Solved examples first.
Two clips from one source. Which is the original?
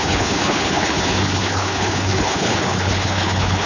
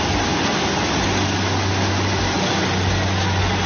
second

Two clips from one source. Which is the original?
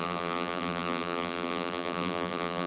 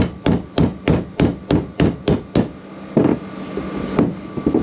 second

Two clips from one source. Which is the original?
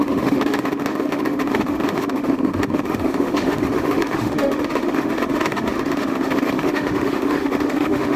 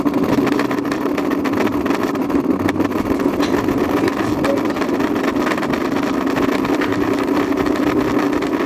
second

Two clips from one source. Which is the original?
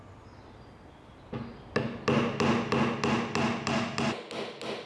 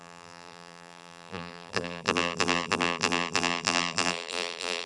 first